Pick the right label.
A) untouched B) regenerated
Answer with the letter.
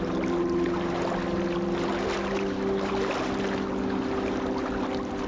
A